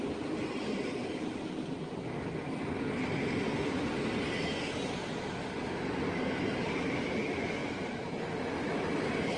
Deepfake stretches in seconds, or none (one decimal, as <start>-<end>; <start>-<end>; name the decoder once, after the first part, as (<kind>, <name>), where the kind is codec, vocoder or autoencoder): 7.6-8.2 (vocoder, BigVGAN v2)